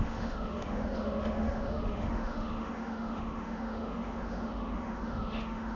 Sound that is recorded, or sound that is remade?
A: remade